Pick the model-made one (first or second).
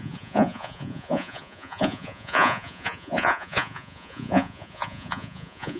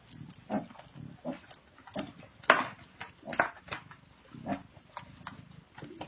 first